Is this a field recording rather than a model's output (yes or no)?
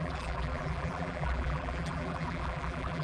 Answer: no